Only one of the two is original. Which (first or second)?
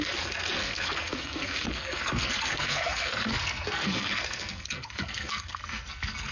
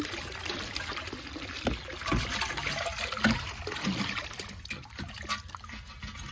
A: second